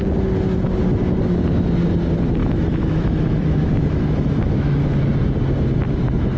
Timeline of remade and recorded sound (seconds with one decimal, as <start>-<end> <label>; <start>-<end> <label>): 0.0-2.4 recorded; 2.4-5.0 remade; 5.0-6.4 recorded